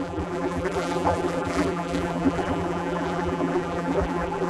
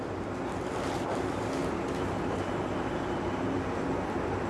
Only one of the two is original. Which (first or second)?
second